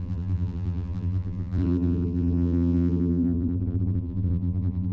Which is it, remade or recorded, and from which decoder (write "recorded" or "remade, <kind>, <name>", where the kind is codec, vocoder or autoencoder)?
remade, vocoder, BigVGAN v2